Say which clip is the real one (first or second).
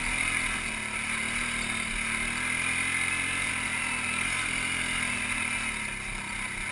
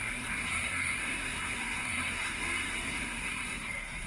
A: first